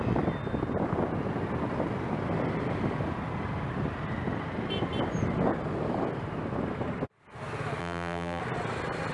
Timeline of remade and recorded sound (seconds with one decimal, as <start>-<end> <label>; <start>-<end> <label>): 0.0-7.8 recorded; 7.8-8.4 remade; 8.4-9.1 recorded